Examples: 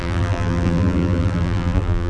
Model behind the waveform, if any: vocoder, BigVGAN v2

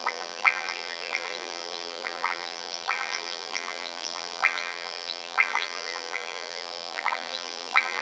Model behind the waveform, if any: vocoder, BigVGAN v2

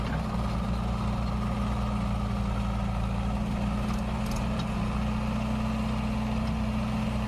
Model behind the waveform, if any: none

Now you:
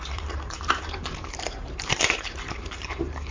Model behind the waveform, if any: vocoder, BigVGAN v2